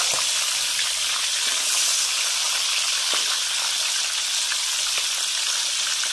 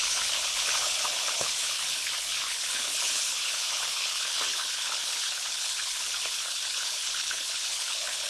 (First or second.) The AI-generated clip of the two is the second